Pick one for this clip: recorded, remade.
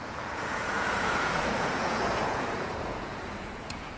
remade